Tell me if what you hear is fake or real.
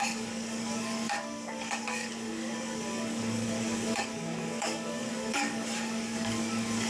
fake